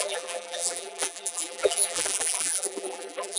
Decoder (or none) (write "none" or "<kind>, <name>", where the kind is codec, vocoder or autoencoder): vocoder, BigVGAN v2